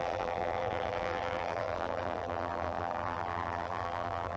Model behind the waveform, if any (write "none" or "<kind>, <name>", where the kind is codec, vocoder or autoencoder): vocoder, BigVGAN v2